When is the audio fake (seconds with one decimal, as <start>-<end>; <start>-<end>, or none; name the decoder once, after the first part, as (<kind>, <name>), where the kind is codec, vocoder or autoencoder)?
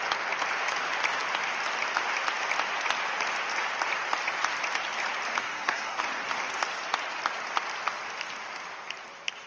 5.4-6.0 (codec, SNAC)